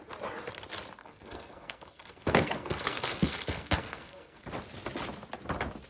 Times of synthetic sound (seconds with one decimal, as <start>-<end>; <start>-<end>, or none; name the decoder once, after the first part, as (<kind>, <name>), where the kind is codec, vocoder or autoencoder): 1.0-4.5 (codec, SNAC)

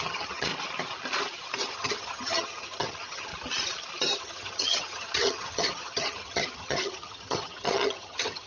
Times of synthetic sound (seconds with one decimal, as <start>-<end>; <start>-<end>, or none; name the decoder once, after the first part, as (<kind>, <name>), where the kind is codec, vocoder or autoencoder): 0.0-0.5 (vocoder, HiFi-GAN); 1.7-3.3; 4.2-8.5

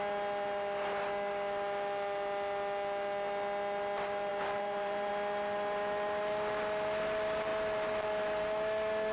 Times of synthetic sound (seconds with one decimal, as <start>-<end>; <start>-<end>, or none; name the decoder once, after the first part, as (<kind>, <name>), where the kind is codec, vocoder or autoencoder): 4.3-5.1 (vocoder, BigVGAN v2)